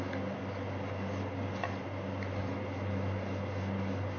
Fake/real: real